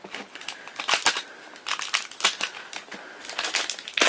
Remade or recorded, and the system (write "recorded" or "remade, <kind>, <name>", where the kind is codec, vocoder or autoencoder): recorded